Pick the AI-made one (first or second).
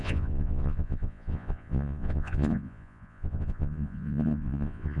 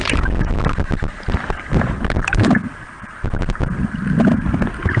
first